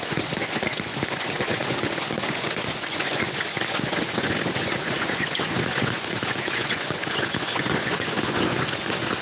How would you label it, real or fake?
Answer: fake